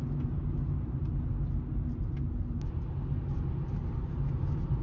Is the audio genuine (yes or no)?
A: yes